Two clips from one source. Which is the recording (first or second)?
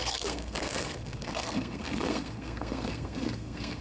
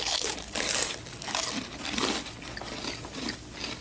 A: second